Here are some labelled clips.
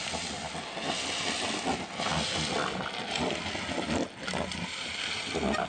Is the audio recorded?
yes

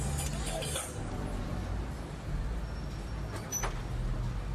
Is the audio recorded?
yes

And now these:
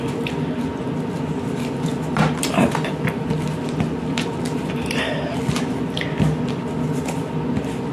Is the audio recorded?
yes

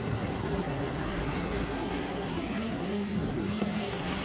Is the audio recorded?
no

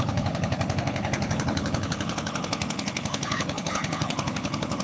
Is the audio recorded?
no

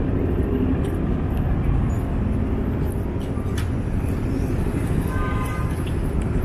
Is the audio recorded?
yes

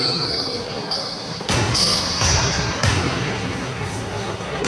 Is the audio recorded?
no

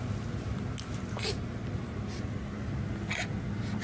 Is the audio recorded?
yes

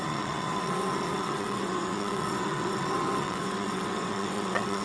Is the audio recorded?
no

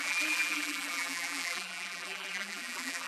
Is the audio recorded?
no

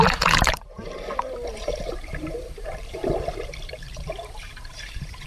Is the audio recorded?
no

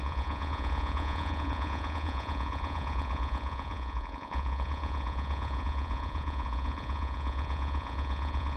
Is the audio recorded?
no